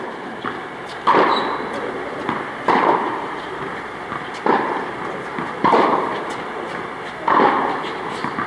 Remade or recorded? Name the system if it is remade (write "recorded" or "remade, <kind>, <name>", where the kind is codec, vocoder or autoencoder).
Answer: remade, vocoder, BigVGAN v2